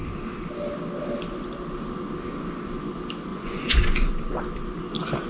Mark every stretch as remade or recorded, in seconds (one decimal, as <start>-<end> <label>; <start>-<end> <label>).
0.0-3.3 recorded; 3.3-4.1 remade; 4.1-5.3 recorded